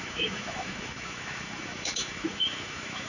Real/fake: fake